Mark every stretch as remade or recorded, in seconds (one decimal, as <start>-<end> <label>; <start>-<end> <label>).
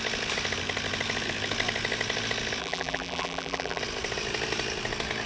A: 0.0-2.6 recorded; 2.6-3.8 remade; 3.8-5.3 recorded